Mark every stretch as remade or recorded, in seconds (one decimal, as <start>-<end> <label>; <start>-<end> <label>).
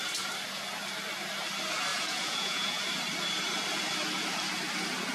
0.0-1.9 recorded; 1.9-2.8 remade; 2.8-5.1 recorded